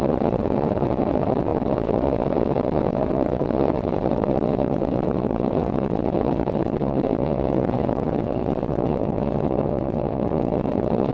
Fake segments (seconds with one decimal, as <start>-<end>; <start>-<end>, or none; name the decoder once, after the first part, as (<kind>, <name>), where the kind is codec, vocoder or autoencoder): 0.0-11.1 (vocoder, WaveNeXt)